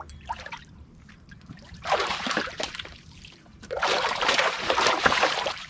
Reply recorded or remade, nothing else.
remade